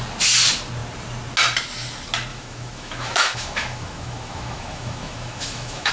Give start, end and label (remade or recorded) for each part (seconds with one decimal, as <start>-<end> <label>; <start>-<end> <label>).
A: 0.0-2.3 recorded; 2.3-5.9 remade